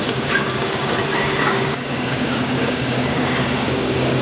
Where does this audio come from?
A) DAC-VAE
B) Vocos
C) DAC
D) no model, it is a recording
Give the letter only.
C